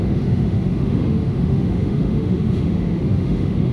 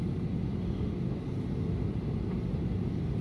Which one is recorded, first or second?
second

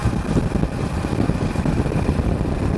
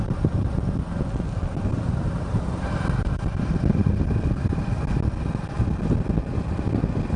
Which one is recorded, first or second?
second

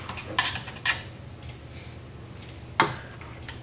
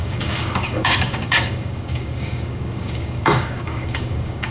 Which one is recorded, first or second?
first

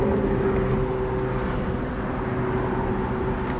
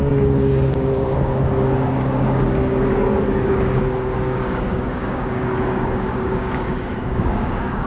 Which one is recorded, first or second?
first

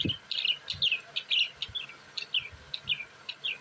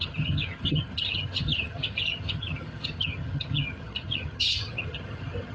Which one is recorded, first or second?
first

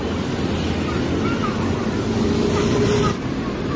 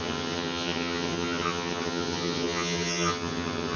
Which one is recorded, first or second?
first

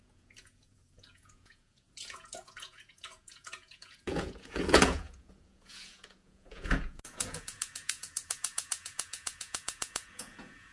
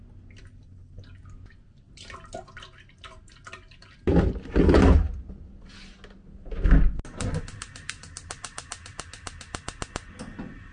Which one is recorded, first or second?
second